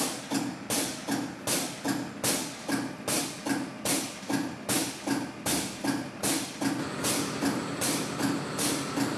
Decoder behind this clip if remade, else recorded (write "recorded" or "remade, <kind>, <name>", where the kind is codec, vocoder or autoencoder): recorded